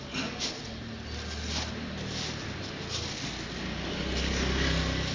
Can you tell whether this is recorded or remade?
recorded